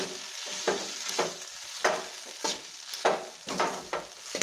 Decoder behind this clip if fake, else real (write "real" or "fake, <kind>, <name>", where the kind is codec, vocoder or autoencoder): real